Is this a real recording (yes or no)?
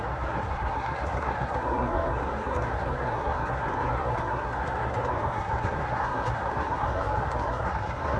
no